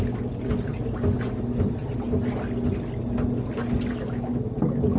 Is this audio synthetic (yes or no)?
no